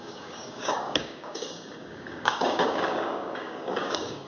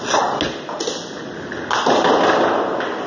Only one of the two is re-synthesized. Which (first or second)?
first